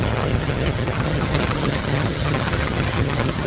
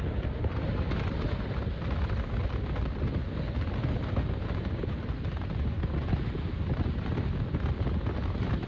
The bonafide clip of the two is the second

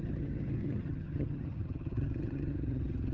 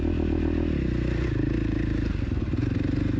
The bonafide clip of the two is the second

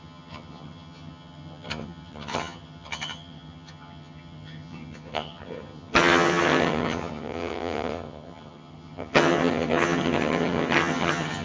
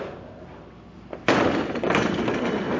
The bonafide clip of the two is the second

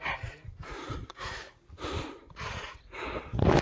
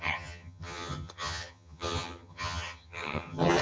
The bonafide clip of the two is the first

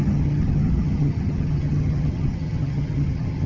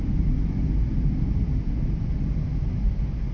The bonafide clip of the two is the second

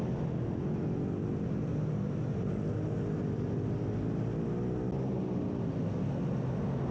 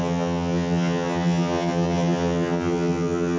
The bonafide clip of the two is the first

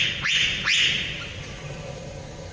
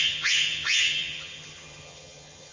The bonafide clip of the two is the first